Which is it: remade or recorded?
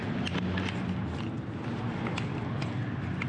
recorded